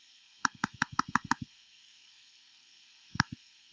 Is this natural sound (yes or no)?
no